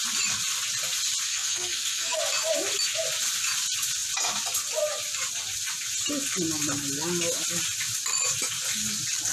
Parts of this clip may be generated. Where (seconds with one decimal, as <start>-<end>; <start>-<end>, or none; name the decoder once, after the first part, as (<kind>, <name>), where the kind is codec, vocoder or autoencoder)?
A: 1.3-2.2 (codec, SNAC)